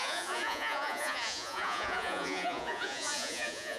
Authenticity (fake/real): fake